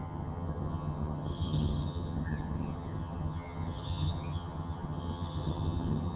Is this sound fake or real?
fake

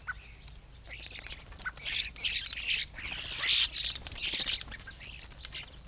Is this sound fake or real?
real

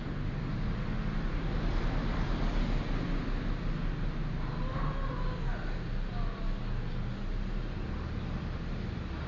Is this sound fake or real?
real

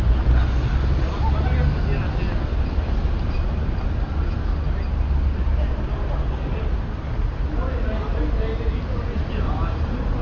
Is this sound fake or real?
real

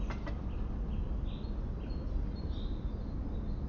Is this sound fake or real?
real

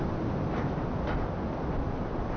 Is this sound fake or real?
real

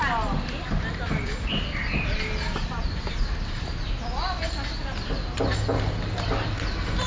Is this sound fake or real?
real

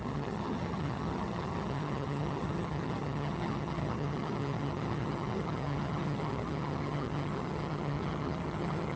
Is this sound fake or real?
fake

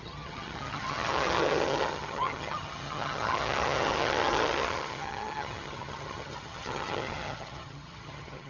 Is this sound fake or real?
fake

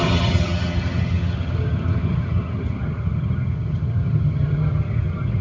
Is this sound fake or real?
fake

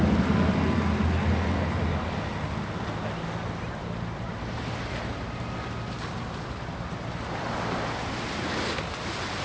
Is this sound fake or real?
real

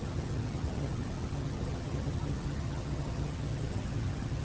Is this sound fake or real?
fake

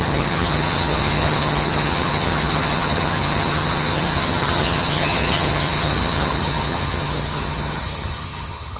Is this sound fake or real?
fake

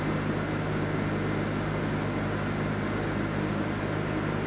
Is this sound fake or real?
real